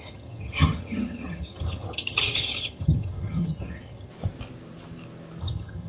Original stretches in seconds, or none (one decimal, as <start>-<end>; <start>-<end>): 4.1-5.4